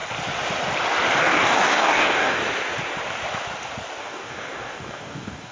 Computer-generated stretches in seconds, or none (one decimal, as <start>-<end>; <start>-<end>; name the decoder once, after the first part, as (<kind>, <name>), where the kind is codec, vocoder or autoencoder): 1.2-2.4 (codec, DAC); 4.0-5.5